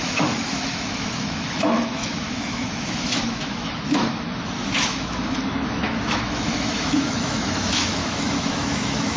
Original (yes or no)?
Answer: no